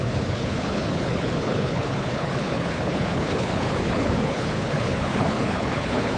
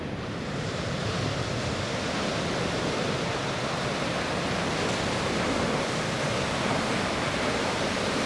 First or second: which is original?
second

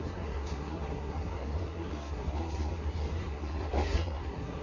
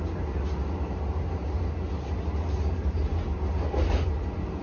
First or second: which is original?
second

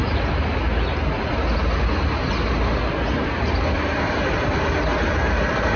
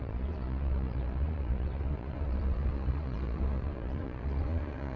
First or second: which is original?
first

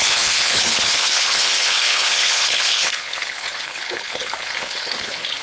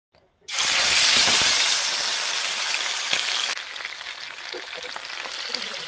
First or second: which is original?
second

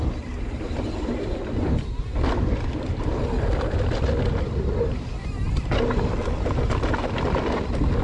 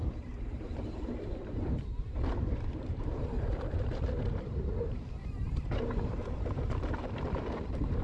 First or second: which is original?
first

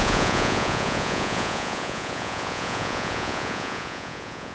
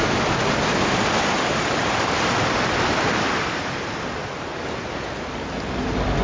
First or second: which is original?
second